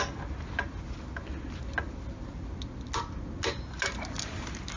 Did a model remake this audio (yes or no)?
no